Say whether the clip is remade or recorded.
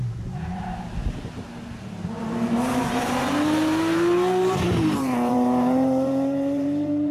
remade